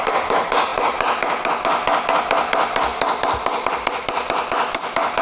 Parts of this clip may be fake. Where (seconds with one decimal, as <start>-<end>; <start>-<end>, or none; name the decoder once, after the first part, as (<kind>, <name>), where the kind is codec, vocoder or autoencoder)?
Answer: none